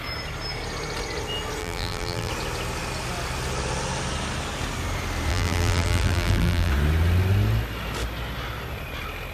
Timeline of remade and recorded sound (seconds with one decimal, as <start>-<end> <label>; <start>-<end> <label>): 0.0-1.6 recorded; 1.6-2.3 remade; 2.3-5.3 recorded; 5.3-6.7 remade; 6.7-9.3 recorded